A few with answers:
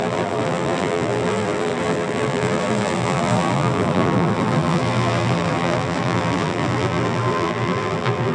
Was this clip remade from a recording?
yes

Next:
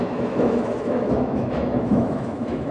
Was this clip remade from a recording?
yes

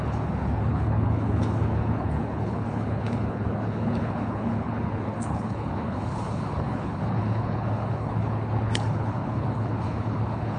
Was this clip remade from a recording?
yes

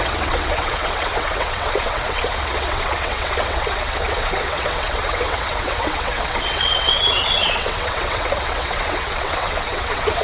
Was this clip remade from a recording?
yes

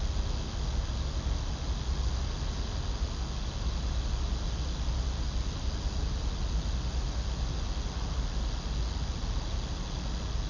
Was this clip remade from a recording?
no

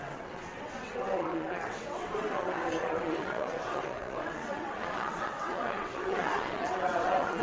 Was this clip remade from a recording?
yes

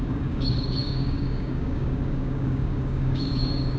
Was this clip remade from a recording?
yes